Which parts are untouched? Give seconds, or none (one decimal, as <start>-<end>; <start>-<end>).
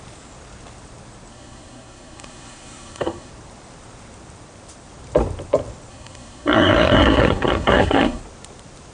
0.0-1.3; 3.3-5.9; 8.2-8.9